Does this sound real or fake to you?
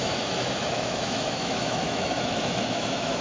fake